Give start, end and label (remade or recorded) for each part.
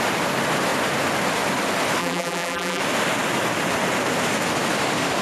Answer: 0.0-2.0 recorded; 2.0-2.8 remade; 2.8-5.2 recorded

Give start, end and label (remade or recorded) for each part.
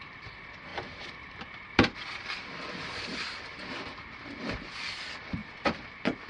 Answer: 0.0-6.3 remade